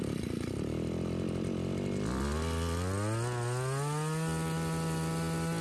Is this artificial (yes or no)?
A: no